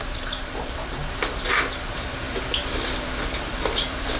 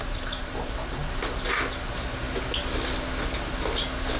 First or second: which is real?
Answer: second